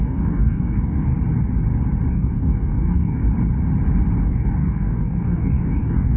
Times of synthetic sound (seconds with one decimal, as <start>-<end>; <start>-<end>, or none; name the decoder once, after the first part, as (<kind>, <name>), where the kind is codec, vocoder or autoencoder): 0.0-1.1 (codec, DAC); 2.1-3.2; 4.2-6.2